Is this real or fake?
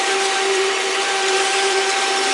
fake